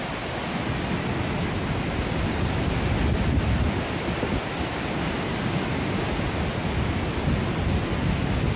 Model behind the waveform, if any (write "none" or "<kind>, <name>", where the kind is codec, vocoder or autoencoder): none